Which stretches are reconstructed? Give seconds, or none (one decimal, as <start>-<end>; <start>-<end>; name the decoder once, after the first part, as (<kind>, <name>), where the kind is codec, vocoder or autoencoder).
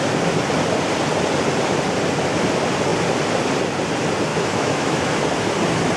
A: 4.3-5.1 (autoencoder, DAC-VAE)